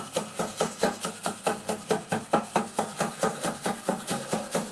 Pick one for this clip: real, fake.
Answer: fake